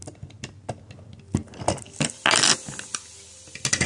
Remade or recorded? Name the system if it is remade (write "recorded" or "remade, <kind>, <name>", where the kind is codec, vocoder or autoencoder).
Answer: recorded